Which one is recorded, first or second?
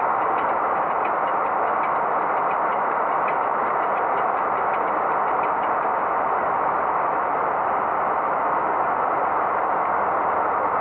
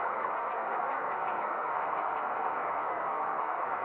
first